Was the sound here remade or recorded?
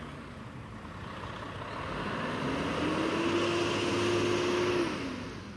recorded